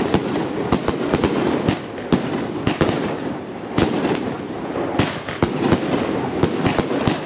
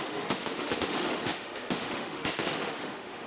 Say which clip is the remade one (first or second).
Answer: second